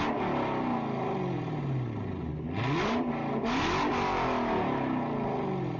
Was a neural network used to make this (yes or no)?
no